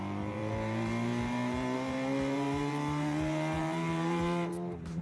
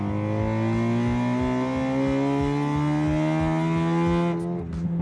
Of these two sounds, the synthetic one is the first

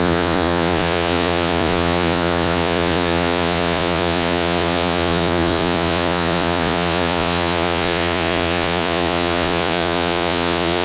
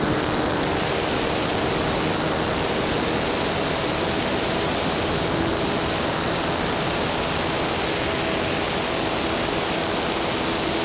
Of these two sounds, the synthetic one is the first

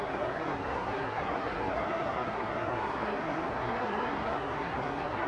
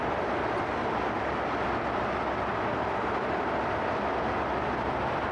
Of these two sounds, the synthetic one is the first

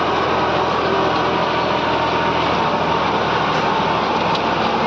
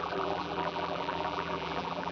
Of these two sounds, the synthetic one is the second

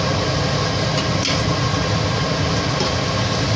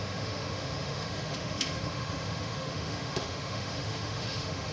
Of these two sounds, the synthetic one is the second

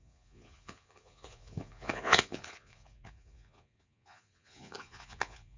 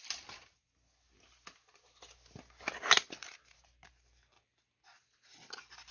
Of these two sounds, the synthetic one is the first